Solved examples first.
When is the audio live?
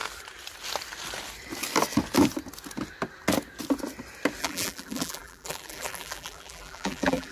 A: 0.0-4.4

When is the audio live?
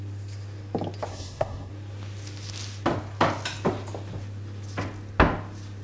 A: 0.0-1.1; 1.7-5.8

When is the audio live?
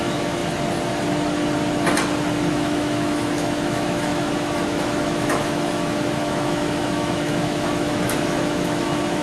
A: 0.4-2.5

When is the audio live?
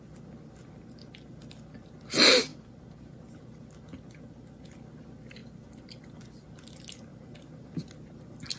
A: 0.0-7.1; 7.9-8.6